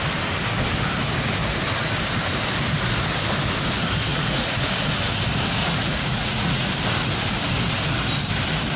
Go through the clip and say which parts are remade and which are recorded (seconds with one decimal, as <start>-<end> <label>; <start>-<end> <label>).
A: 0.0-4.1 recorded; 4.1-4.7 remade; 4.7-5.6 recorded; 5.6-6.7 remade; 6.7-8.8 recorded